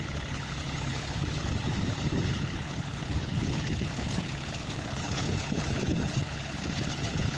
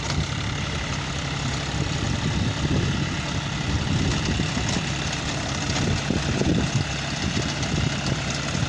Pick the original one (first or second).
second